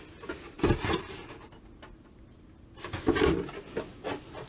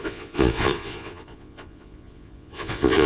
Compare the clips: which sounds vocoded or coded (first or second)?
second